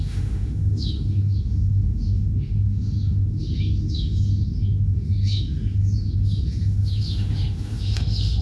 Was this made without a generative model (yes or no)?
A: no